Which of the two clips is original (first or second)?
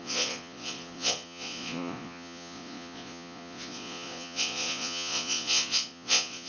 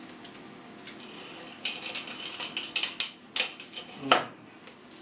second